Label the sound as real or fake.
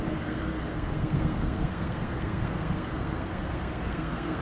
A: fake